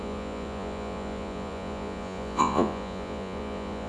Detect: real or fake fake